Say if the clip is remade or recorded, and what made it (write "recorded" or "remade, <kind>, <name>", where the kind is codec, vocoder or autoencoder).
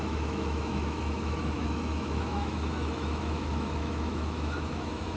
remade, autoencoder, DAC-VAE